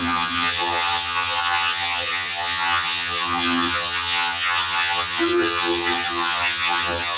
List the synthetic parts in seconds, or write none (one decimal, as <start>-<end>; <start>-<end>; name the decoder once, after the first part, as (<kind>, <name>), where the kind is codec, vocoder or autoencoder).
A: 0.0-7.2 (vocoder, HiFi-GAN)